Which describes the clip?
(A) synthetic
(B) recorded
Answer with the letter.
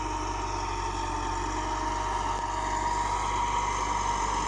B